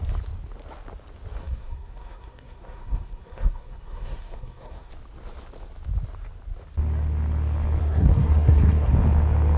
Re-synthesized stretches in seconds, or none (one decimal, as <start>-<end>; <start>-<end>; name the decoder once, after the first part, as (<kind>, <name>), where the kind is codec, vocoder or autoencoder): 1.4-4.9 (codec, SNAC); 7.8-8.9